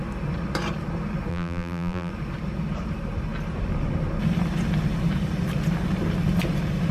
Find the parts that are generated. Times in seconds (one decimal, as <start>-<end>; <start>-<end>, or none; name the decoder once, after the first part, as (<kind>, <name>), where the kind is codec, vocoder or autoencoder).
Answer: 1.3-2.1 (vocoder, BigVGAN v2)